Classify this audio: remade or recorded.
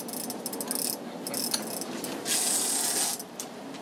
recorded